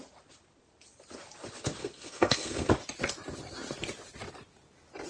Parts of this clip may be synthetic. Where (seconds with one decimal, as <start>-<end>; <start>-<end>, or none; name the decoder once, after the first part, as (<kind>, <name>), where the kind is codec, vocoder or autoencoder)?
1.8-2.7 (codec, SNAC)